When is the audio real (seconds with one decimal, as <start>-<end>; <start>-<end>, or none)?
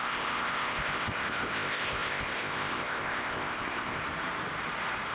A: 4.0-5.1